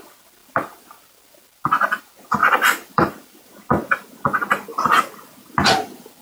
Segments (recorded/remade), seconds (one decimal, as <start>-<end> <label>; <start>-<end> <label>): 0.0-0.4 recorded; 0.4-2.0 remade; 2.0-2.4 recorded; 2.4-3.5 remade; 3.5-4.7 recorded; 4.7-6.2 remade